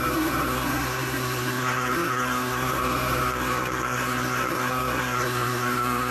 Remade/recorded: remade